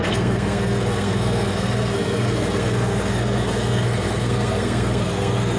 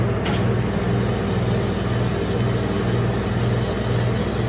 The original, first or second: second